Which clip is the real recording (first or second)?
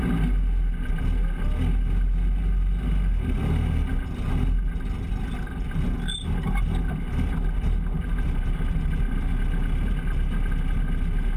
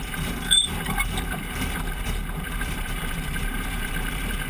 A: first